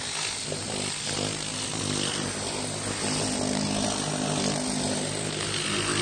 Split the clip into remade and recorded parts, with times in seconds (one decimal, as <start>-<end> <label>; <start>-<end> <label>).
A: 0.0-6.0 recorded